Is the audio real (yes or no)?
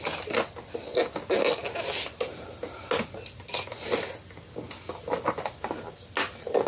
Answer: yes